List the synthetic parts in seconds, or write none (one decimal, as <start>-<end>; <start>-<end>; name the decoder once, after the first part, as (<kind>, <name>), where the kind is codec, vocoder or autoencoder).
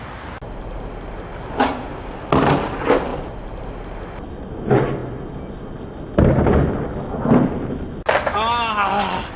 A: none